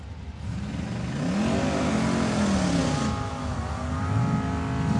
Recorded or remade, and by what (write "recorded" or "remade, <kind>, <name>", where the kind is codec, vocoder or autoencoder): recorded